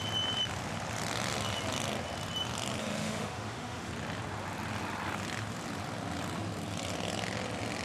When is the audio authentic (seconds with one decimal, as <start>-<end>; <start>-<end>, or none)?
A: 0.0-2.8; 3.9-7.8